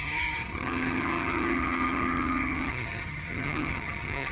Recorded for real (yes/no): no